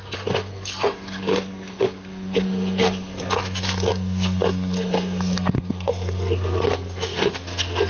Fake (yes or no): yes